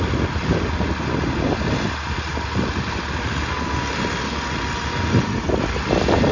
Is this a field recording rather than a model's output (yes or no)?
yes